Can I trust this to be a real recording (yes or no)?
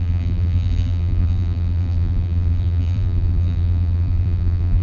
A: no